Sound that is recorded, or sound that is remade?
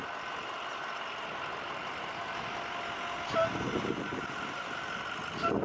recorded